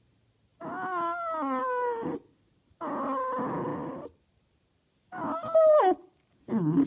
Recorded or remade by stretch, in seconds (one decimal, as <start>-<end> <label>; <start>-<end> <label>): 0.0-3.7 recorded; 3.7-4.2 remade; 4.2-6.9 recorded